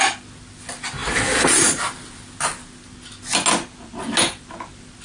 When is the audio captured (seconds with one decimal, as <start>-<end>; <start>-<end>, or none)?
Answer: 0.0-5.0